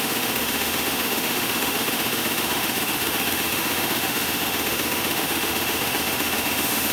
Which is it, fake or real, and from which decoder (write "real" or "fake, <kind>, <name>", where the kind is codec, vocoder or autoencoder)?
fake, autoencoder, DAC-VAE